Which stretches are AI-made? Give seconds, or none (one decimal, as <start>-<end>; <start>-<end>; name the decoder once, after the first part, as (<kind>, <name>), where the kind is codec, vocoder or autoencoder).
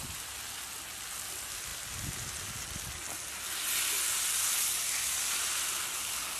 none